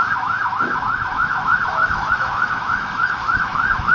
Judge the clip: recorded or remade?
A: remade